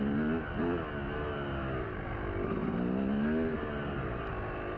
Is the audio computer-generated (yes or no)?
no